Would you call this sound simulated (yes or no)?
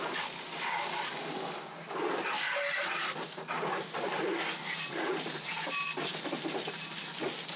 no